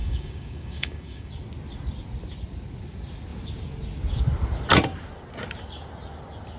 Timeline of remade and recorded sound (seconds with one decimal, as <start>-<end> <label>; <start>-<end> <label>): 0.0-1.3 remade; 1.3-6.6 recorded